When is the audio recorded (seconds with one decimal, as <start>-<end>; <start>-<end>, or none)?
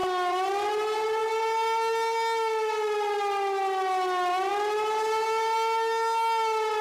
0.0-6.8